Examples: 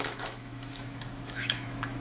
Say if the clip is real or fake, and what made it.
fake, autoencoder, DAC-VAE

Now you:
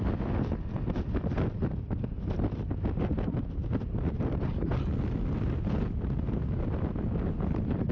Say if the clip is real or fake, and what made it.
real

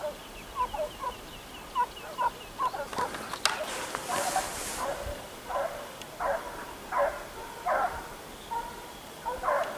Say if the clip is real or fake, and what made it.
real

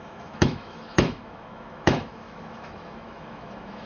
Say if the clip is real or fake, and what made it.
fake, autoencoder, DAC-VAE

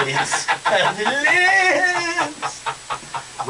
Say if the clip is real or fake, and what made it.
real